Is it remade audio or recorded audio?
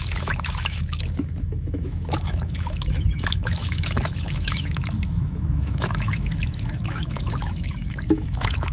remade